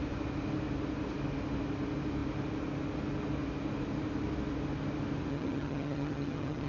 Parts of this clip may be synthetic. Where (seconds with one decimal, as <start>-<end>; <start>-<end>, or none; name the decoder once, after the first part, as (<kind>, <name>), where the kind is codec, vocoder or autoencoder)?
5.3-6.7 (vocoder, HiFi-GAN)